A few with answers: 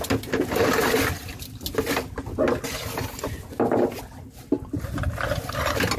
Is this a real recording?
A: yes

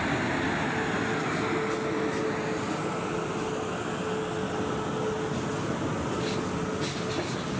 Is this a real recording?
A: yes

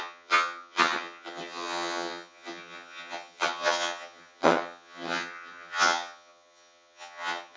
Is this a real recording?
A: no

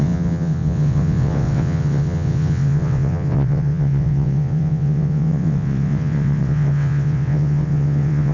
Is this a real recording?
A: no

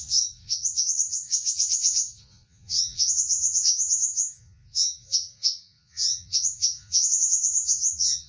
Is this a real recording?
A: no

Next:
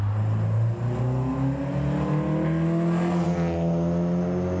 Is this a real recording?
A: yes